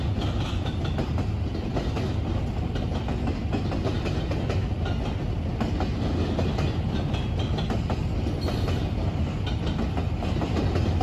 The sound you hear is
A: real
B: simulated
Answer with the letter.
A